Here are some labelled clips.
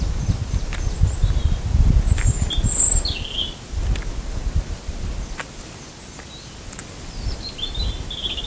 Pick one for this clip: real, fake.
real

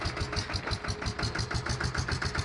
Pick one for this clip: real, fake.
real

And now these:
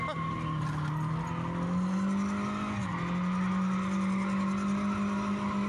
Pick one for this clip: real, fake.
real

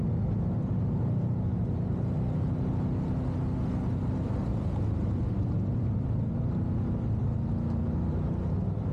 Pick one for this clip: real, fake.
real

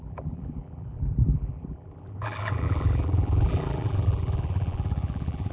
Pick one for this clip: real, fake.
fake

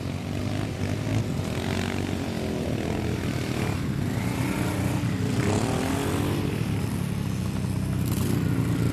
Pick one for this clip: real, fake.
real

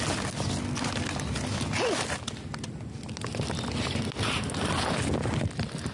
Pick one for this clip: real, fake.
real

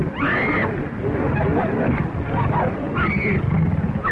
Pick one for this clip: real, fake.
real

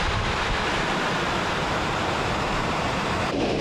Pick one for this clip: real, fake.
fake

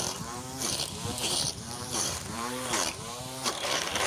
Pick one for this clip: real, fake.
fake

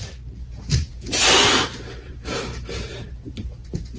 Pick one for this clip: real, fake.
fake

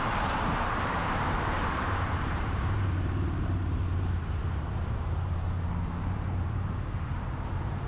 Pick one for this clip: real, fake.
fake